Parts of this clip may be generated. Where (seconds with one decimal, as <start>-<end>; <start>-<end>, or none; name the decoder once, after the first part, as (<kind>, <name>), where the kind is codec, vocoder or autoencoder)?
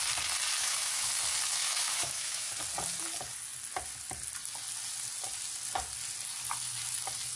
0.6-1.1 (autoencoder, DAC-VAE); 1.6-2.5